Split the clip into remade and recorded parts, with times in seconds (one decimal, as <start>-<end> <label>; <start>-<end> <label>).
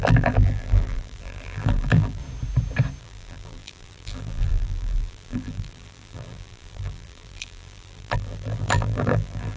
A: 0.0-2.2 remade; 2.2-3.0 recorded; 3.0-9.6 remade